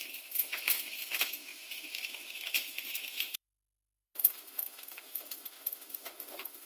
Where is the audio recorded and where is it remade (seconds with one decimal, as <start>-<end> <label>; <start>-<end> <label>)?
0.0-6.7 remade